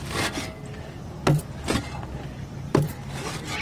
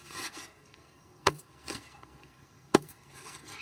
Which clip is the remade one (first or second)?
second